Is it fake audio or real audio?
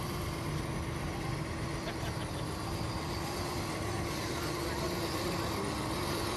real